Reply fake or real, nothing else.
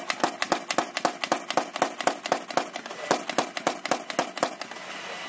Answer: real